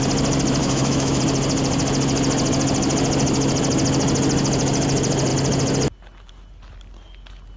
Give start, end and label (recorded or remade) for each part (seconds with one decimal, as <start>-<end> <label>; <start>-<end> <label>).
0.0-0.6 recorded; 0.6-1.2 remade; 1.2-7.6 recorded

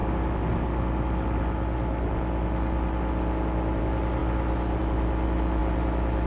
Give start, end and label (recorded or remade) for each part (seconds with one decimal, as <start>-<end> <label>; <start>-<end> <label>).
0.0-6.3 recorded

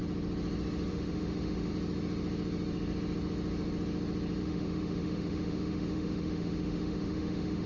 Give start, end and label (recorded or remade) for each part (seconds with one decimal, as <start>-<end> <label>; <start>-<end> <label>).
0.0-0.9 recorded; 0.9-1.7 remade; 1.7-4.4 recorded; 4.4-7.7 remade

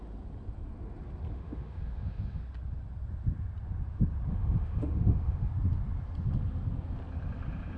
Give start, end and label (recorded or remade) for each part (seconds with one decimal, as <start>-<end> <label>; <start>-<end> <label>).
0.0-1.3 recorded; 1.3-2.4 remade; 2.4-4.3 recorded; 4.3-5.5 remade; 5.5-7.8 recorded

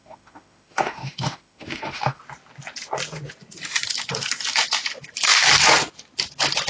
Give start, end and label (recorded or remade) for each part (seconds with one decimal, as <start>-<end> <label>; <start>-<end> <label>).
0.0-2.2 remade; 2.2-6.7 recorded

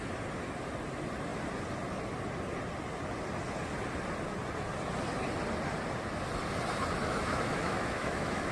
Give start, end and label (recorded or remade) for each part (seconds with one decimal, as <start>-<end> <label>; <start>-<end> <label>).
0.0-7.0 recorded; 7.0-8.5 remade